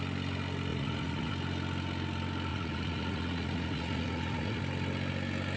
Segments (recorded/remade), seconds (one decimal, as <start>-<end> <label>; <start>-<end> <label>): 0.0-0.7 recorded; 0.7-1.3 remade; 1.3-2.5 recorded; 2.5-4.6 remade; 4.6-5.6 recorded